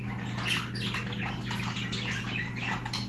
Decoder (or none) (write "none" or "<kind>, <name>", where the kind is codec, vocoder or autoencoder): none